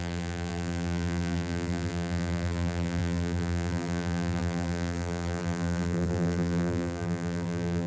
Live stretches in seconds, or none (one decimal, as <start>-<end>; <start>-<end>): none